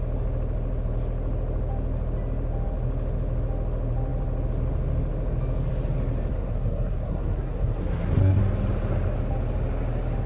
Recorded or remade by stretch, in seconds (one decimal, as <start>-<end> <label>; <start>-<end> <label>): 0.0-6.3 recorded; 6.3-8.4 remade; 8.4-10.3 recorded